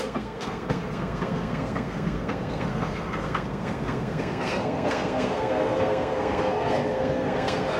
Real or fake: fake